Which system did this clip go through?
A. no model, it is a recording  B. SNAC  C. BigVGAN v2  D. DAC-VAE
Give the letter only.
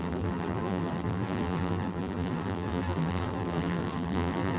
C